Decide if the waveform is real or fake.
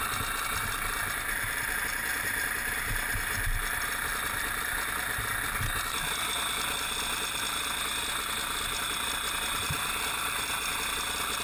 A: real